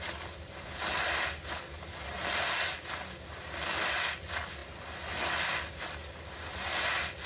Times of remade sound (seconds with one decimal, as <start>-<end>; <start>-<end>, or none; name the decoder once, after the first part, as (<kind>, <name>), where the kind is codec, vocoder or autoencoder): none